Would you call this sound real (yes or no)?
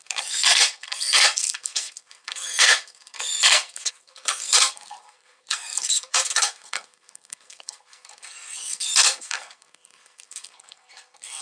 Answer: no